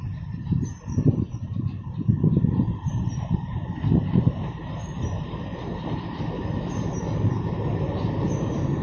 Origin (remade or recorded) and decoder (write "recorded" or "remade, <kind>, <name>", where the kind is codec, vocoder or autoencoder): remade, vocoder, BigVGAN v2